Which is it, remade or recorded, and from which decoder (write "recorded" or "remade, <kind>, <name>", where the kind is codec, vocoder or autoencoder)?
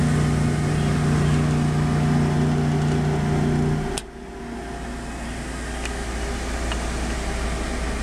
recorded